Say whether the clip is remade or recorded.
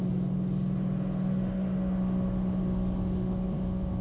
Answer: recorded